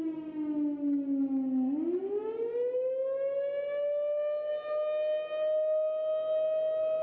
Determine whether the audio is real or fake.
real